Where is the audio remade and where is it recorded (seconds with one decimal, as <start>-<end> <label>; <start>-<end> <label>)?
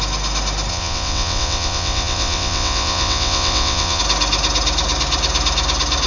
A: 0.0-0.7 recorded; 0.7-4.0 remade; 4.0-6.1 recorded